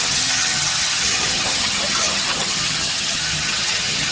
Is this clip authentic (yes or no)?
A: no